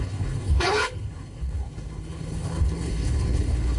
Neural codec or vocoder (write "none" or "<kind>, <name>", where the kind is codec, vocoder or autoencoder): codec, HILCodec